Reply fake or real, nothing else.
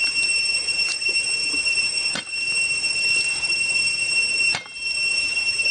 fake